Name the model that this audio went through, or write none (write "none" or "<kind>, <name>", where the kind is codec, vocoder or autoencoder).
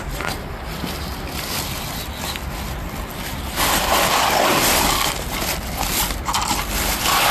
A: none